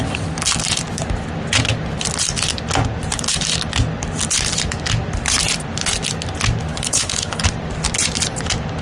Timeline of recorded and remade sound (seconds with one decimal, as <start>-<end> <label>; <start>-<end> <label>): 0.0-6.7 recorded; 6.7-7.4 remade; 7.4-8.8 recorded